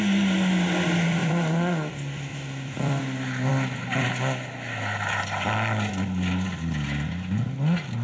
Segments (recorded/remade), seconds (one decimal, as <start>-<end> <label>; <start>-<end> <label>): 0.0-1.2 recorded; 1.2-1.9 remade; 1.9-2.3 recorded; 2.3-3.0 remade; 3.0-8.0 recorded